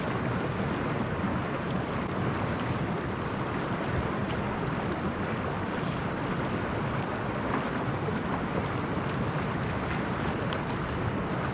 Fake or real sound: real